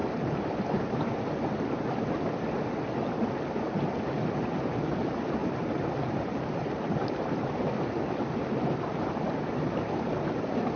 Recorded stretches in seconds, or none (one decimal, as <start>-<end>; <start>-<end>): 1.6-5.4; 10.4-10.8